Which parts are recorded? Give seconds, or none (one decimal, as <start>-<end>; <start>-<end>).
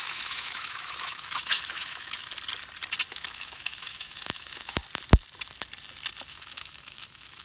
2.2-3.1; 4.8-6.3